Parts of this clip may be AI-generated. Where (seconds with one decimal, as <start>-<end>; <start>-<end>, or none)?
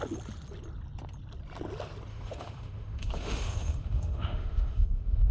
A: 2.1-5.3